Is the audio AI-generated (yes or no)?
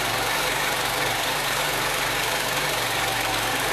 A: yes